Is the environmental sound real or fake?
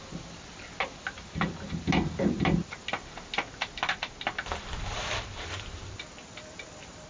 real